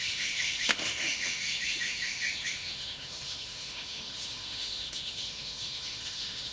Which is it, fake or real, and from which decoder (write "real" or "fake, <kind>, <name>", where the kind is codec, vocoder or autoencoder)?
fake, autoencoder, DAC-VAE